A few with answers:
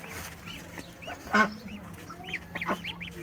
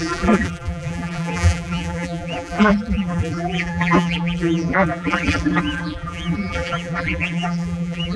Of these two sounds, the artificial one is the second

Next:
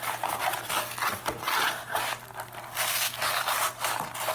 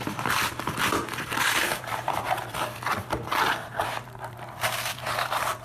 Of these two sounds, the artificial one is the second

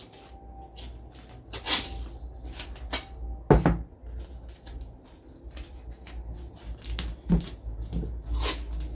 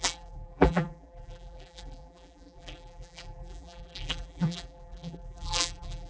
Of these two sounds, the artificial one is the second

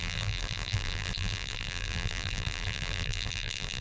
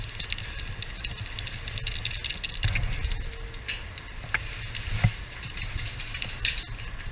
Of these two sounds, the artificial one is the first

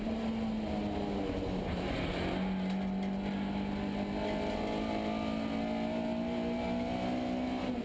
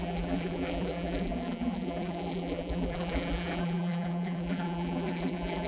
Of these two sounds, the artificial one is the second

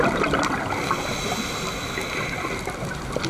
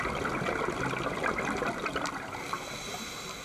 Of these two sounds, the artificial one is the first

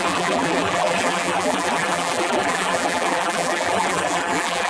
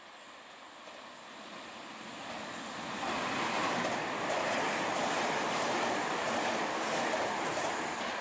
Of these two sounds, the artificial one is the first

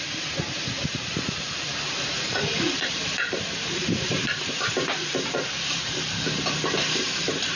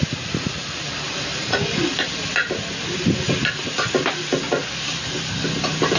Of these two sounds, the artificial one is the first